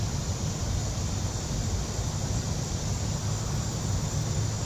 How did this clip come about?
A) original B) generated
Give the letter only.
A